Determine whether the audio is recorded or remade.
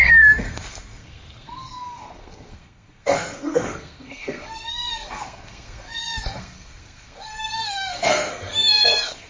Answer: remade